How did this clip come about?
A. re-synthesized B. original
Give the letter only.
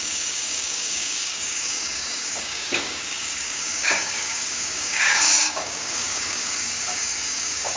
A